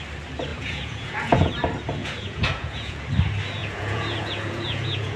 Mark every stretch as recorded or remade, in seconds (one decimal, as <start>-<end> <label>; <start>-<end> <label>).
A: 0.0-0.5 recorded; 0.5-1.5 remade; 1.5-2.0 recorded; 2.0-3.0 remade; 3.0-3.6 recorded; 3.6-5.2 remade

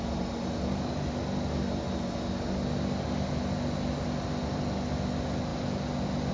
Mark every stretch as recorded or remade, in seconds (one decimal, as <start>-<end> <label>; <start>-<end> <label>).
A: 0.0-6.3 recorded

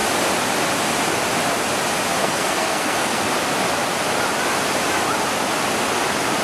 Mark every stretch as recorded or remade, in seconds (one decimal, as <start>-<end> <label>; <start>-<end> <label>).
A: 0.0-2.2 recorded; 2.2-3.3 remade; 3.3-6.4 recorded

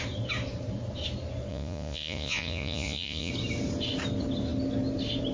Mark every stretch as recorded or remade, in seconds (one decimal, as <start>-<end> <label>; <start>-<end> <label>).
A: 0.0-1.5 recorded; 1.5-3.3 remade; 3.3-5.3 recorded

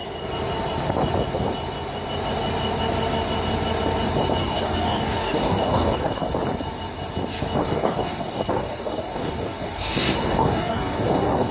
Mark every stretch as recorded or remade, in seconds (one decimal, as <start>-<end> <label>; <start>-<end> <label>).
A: 0.0-4.4 recorded; 4.4-6.3 remade; 6.3-7.6 recorded; 7.6-11.5 remade

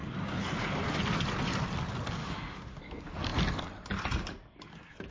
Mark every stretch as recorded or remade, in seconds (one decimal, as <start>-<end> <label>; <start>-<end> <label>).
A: 0.0-2.2 recorded; 2.2-2.8 remade; 2.8-5.1 recorded